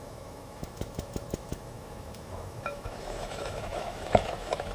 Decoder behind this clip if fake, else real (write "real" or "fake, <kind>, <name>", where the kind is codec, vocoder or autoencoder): fake, autoencoder, DAC-VAE